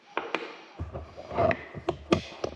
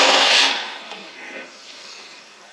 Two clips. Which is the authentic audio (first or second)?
first